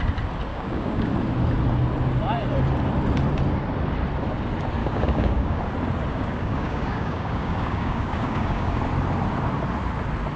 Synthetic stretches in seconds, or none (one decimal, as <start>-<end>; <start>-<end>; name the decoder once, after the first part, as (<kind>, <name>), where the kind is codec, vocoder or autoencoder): 0.5-1.1 (codec, DAC); 4.8-5.6; 6.1-8.8